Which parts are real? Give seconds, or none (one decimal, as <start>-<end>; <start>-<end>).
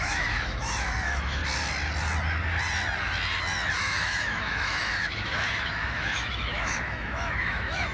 1.4-3.7